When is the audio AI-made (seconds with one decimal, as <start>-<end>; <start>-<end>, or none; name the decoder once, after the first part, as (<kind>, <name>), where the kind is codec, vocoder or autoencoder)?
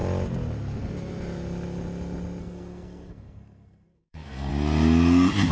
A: 2.4-4.5 (codec, SNAC)